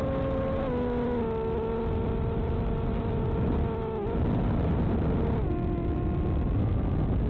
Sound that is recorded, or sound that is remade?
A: recorded